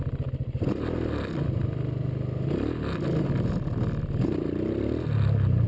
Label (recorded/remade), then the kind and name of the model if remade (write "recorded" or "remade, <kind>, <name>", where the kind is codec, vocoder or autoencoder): recorded